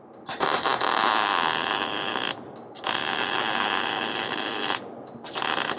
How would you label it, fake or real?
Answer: real